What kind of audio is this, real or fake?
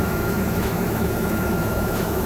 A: fake